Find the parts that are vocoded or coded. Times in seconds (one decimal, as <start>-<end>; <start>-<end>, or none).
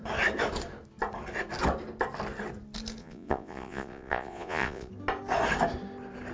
3.0-4.9